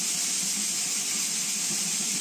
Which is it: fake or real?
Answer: real